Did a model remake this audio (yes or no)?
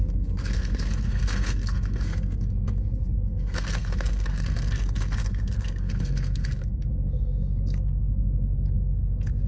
yes